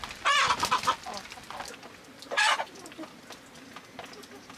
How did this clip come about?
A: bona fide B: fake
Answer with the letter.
A